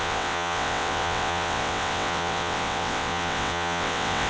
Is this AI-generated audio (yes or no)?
yes